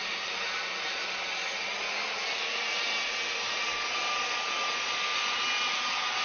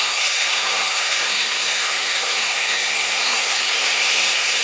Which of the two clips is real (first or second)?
first